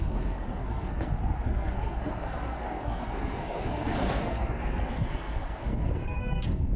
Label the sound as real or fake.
fake